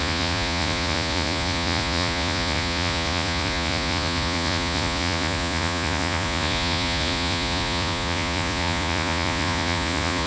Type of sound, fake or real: fake